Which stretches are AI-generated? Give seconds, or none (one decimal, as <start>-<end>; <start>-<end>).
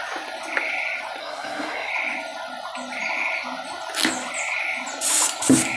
1.2-1.9